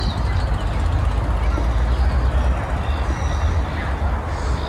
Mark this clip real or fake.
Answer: real